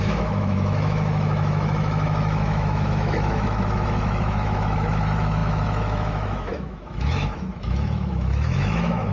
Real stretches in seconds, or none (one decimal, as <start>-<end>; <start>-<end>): none